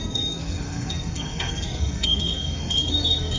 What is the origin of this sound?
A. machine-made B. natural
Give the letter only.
A